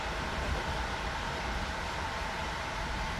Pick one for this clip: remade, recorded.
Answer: recorded